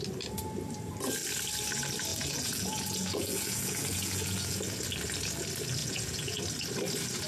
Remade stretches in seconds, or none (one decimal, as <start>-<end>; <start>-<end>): 2.1-4.6; 5.8-6.4